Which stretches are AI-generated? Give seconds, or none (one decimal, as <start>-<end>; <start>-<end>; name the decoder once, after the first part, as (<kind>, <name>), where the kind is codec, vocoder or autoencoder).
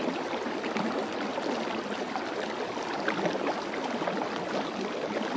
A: none